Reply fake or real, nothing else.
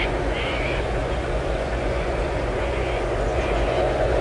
fake